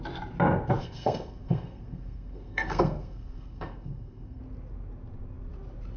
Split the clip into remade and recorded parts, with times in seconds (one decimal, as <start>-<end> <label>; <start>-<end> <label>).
0.0-0.8 recorded; 0.8-4.4 remade; 4.4-6.0 recorded